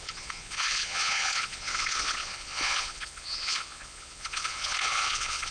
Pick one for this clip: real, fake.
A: fake